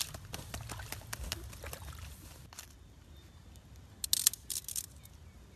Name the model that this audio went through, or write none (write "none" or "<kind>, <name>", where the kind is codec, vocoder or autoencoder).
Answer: none